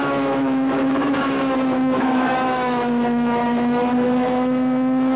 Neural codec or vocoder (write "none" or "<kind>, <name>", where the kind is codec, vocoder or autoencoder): autoencoder, DAC-VAE